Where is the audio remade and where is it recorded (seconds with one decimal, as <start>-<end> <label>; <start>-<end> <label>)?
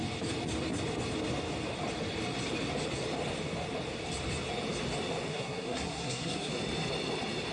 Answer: 0.0-5.3 recorded; 5.3-6.5 remade; 6.5-7.5 recorded